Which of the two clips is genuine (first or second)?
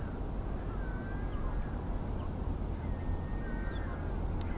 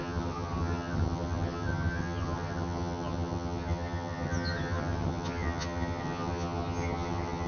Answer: first